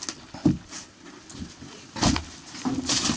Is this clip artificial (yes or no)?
no